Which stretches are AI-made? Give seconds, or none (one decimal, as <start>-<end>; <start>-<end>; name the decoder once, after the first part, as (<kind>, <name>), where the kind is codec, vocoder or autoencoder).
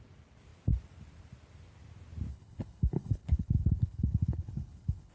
2.3-5.1 (codec, HILCodec)